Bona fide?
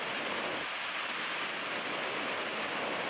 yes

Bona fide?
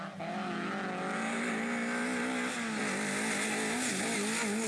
yes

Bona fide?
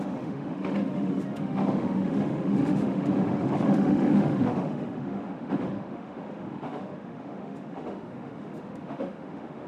no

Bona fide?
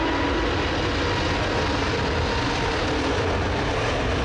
yes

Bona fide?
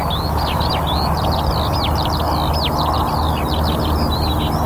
yes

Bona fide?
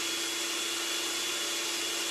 yes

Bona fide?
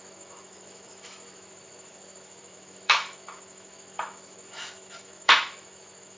no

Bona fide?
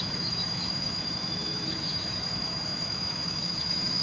no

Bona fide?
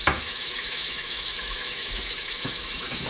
no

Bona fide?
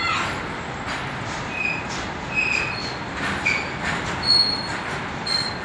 yes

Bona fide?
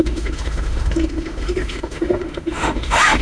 no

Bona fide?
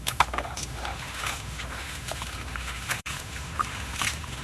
no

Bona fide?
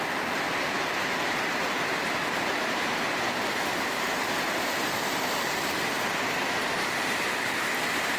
yes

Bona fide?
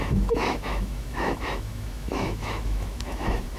no